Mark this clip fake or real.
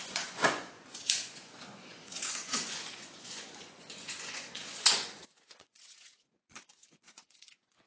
fake